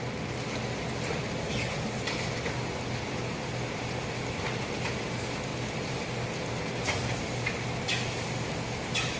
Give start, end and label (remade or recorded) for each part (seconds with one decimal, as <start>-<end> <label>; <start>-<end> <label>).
0.0-9.2 recorded